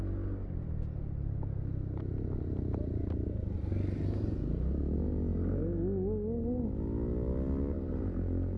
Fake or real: real